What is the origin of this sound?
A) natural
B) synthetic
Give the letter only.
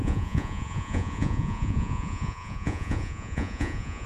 B